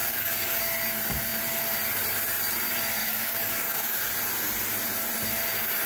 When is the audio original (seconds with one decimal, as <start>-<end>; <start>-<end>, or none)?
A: 0.6-3.0; 4.0-5.9

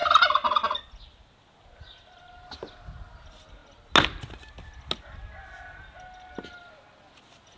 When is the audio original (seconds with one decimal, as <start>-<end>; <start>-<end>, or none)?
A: 0.0-7.6

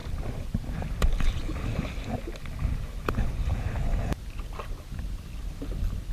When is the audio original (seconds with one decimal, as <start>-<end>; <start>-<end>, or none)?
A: 0.0-6.1

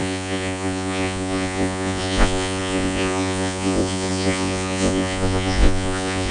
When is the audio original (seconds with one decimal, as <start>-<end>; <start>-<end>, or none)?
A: none